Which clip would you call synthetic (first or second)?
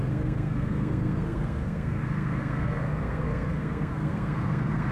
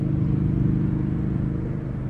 first